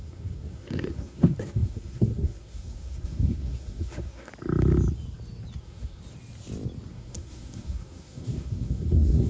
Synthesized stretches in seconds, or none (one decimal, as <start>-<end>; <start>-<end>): 0.0-4.3; 5.6-6.0; 6.9-9.3